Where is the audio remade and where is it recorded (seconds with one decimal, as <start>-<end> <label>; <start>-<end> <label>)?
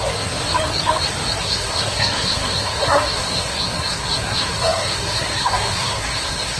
0.0-0.4 remade; 0.4-1.4 recorded; 1.4-6.6 remade